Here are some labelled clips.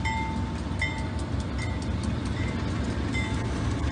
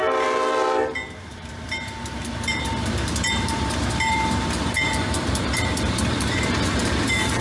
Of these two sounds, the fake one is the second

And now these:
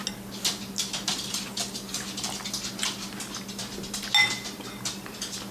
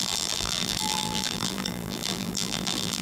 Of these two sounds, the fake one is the second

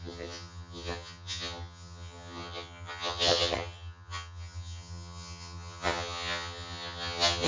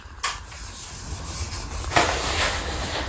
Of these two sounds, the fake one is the first